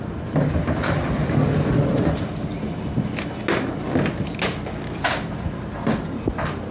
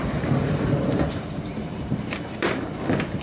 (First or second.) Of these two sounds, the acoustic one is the first